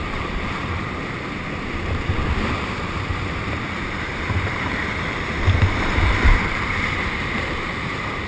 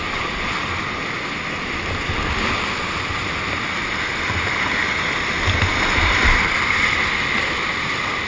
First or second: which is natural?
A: second